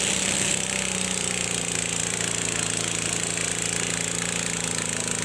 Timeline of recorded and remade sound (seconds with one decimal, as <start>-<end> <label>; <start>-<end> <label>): 0.0-5.2 recorded